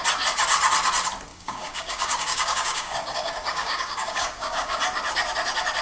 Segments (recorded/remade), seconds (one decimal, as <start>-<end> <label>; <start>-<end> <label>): 0.0-1.3 recorded; 1.3-4.8 remade; 4.8-5.8 recorded

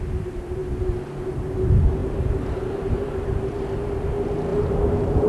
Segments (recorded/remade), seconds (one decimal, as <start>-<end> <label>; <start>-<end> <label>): 0.0-2.0 recorded; 2.0-3.2 remade; 3.2-4.5 recorded; 4.5-5.3 remade

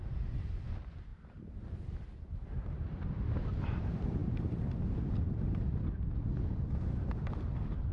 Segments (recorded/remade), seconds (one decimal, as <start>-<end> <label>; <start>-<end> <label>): 0.0-7.9 remade

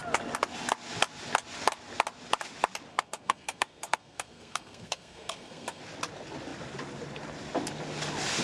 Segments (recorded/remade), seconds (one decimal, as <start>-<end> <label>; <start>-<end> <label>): 0.0-2.9 recorded; 2.9-5.8 remade; 5.8-8.4 recorded

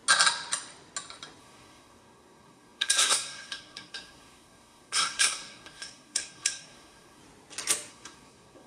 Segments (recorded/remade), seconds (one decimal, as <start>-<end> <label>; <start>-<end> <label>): 0.0-1.4 recorded; 1.4-7.2 remade; 7.2-7.9 recorded; 7.9-8.7 remade

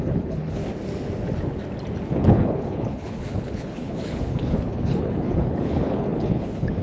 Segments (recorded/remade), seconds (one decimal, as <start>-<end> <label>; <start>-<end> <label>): 0.0-0.6 remade; 0.6-2.1 recorded; 2.1-6.8 remade